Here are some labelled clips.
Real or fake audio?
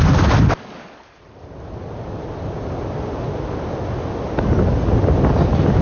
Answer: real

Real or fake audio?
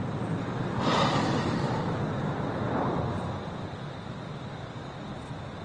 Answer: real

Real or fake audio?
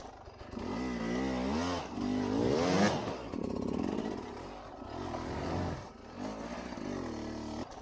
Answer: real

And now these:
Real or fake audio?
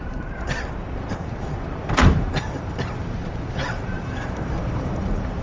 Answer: fake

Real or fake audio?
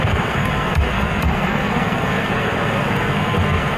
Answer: fake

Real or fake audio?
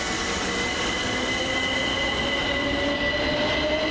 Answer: real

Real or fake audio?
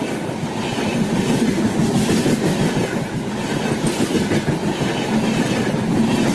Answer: real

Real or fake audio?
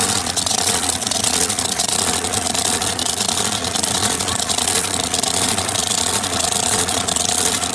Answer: fake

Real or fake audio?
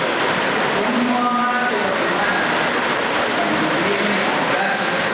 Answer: real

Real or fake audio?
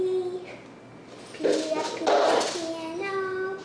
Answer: real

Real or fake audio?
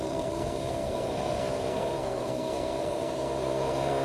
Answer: fake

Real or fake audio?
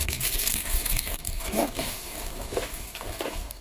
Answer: fake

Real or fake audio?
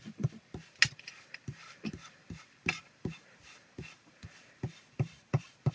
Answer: real